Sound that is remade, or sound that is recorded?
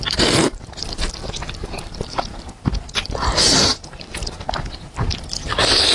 recorded